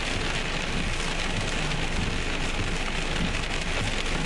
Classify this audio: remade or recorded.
recorded